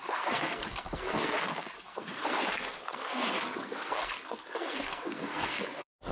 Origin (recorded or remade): remade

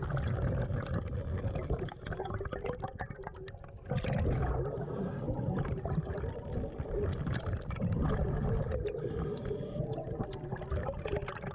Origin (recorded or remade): recorded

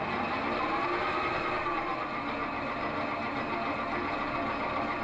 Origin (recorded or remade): recorded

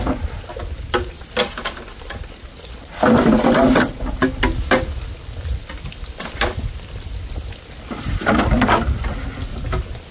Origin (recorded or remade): recorded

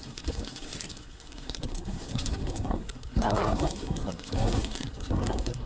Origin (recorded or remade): remade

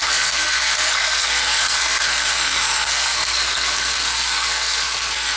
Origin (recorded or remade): remade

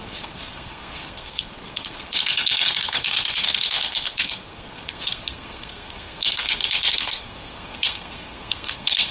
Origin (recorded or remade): remade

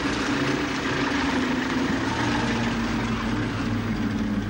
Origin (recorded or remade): recorded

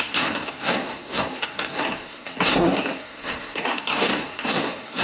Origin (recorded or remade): remade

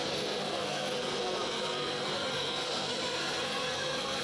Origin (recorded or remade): remade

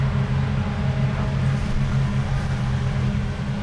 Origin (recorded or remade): recorded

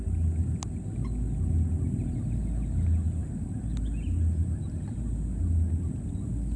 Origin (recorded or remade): recorded